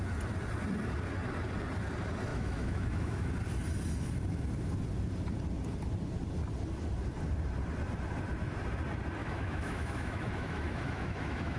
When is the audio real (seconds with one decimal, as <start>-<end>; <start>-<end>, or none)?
0.0-2.3; 3.3-9.2

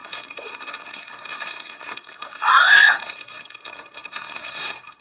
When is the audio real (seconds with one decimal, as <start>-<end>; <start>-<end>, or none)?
none

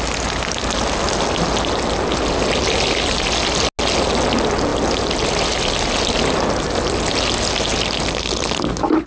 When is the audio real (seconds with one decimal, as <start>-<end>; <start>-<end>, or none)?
0.0-9.1

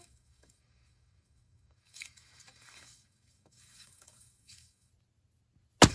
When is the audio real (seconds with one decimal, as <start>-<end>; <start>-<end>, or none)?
4.9-5.9

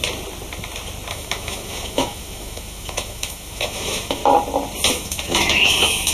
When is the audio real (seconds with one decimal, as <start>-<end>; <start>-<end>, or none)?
0.0-1.1; 4.2-4.9